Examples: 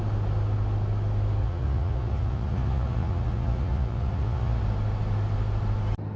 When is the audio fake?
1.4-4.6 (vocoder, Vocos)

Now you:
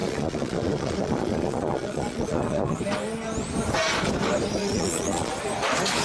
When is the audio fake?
0.0-2.8 (vocoder, Vocos); 4.6-5.3